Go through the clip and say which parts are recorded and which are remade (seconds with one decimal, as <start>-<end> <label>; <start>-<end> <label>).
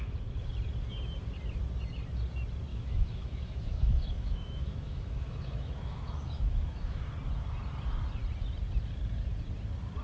0.0-2.7 recorded; 2.7-7.1 remade; 7.1-10.0 recorded